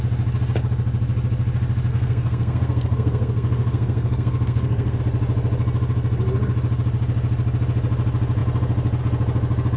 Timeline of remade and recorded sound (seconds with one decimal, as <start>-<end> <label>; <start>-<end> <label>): 0.0-1.9 recorded; 1.9-5.0 remade; 5.0-9.8 recorded